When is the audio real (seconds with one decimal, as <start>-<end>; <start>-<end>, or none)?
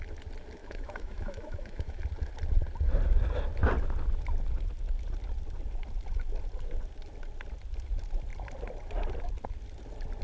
0.0-0.6; 2.0-10.2